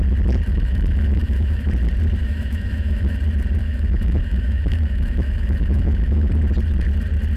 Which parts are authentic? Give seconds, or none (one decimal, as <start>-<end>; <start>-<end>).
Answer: 0.0-0.5; 1.7-2.2; 3.2-3.6; 6.3-7.4

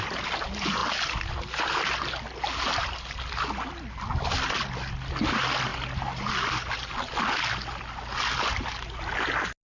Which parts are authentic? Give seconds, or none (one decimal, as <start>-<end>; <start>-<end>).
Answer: 0.0-9.6